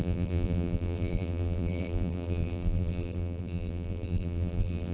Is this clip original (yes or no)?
no